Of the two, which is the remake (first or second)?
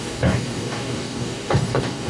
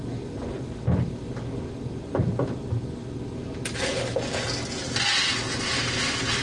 first